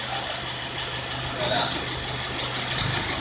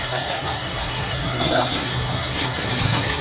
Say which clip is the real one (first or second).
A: first